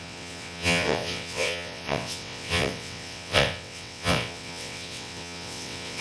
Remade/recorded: remade